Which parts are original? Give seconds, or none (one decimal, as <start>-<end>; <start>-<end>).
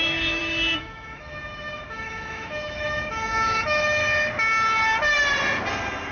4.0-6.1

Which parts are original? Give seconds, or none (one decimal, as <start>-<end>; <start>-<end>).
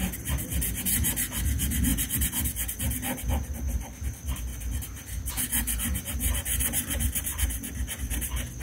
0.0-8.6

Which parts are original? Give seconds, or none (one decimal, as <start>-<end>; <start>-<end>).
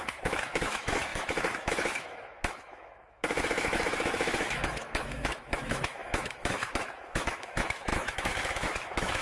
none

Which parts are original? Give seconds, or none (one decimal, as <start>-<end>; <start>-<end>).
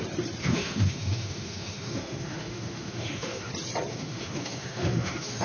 0.0-0.4; 3.5-3.9